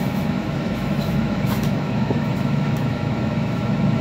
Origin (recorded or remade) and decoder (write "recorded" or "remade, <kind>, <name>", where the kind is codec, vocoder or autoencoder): remade, autoencoder, DAC-VAE